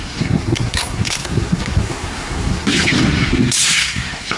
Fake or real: fake